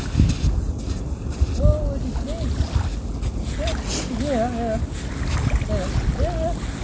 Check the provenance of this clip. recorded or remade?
recorded